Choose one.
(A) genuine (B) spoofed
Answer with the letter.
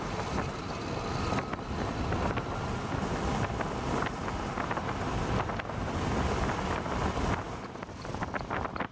A